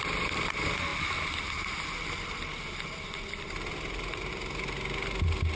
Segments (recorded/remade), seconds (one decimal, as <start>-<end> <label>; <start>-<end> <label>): 0.0-5.6 recorded